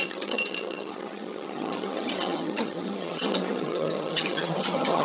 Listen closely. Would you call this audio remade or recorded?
remade